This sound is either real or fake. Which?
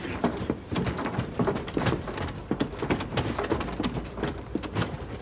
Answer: real